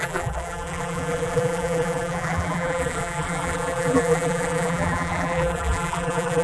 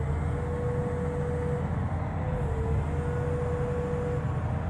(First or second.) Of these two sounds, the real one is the second